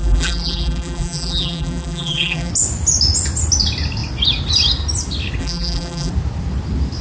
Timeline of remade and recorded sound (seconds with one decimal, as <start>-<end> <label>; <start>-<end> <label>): 0.0-2.5 remade; 2.5-5.4 recorded; 5.4-6.1 remade; 6.1-7.0 recorded